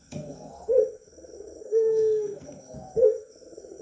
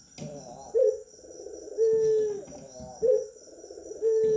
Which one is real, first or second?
second